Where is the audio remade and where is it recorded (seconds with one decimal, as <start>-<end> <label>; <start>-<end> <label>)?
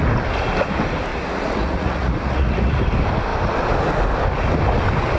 0.0-1.1 recorded; 1.1-2.8 remade; 2.8-5.2 recorded